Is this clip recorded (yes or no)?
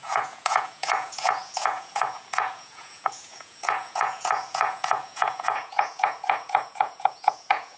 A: no